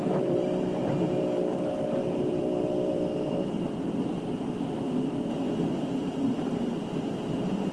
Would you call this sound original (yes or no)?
no